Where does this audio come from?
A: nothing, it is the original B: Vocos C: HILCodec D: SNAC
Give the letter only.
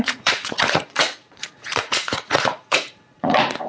B